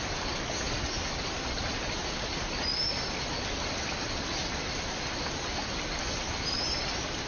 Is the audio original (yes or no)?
yes